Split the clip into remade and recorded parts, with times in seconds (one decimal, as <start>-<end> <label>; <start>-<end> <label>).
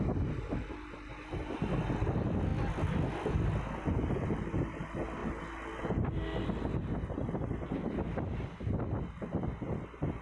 0.0-10.2 recorded